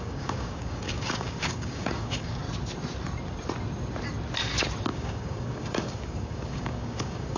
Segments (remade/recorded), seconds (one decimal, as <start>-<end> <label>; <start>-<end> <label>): 0.0-2.4 remade; 2.4-4.9 recorded; 4.9-7.4 remade